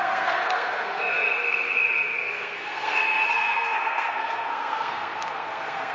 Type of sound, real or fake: fake